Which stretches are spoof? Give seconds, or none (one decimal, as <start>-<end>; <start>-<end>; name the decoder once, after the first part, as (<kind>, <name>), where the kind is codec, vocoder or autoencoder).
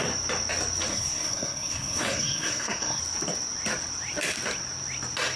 0.9-3.0 (codec, SNAC)